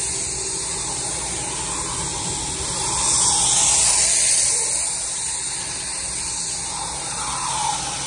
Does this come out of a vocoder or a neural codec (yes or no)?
no